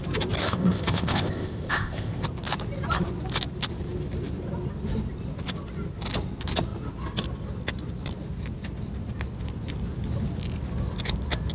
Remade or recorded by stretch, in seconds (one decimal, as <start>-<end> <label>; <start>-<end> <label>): 0.0-0.4 recorded; 0.4-2.2 remade; 2.2-11.5 recorded